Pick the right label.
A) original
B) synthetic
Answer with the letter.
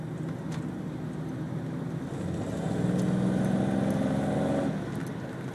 A